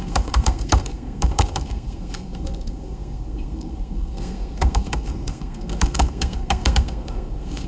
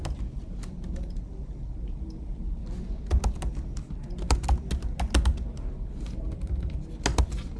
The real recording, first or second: second